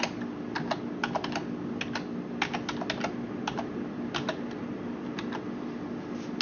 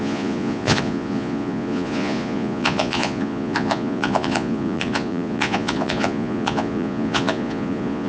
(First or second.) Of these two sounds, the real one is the first